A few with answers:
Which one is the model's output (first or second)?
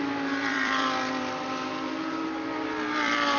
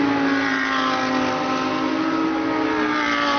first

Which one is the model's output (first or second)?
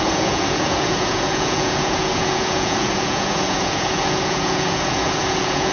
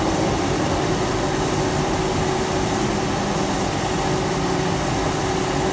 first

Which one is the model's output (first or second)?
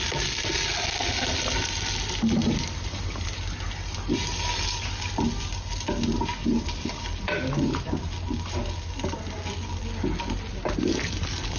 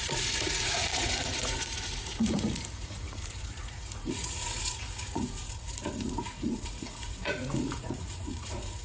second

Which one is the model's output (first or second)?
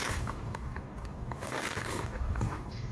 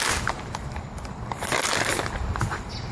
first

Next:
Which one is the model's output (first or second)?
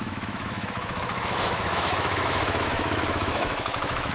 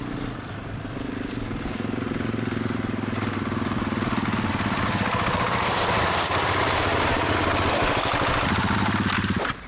first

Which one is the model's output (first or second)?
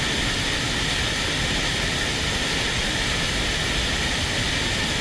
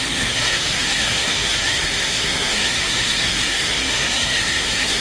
second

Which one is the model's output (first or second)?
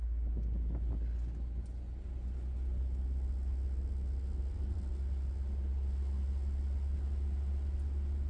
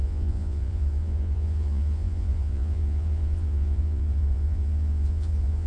second